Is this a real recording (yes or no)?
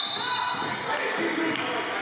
yes